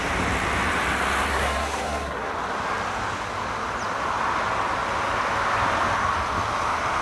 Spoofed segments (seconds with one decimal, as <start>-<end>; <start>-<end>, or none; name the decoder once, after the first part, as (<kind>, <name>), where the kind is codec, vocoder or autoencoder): 1.3-2.3 (codec, SNAC)